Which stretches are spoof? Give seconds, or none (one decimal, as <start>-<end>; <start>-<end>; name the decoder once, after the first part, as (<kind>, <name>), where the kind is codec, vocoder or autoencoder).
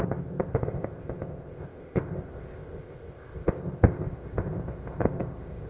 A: 0.0-5.7 (codec, ZipCodec)